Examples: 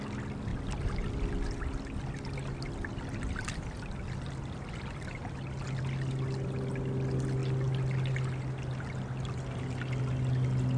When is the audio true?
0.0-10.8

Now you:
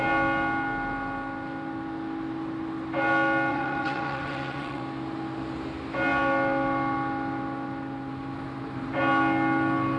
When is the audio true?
0.0-3.5; 4.8-10.0

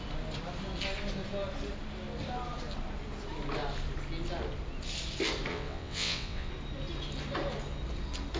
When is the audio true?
0.0-5.5; 6.5-8.4